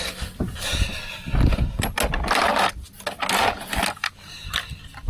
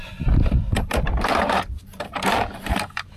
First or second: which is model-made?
second